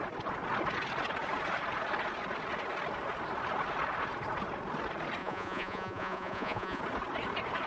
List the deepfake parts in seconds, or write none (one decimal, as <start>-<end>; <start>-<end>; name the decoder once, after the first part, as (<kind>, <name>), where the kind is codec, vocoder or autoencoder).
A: 5.2-6.8 (vocoder, Vocos)